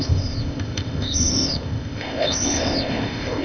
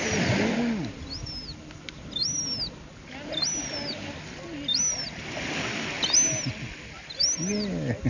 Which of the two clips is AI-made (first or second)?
first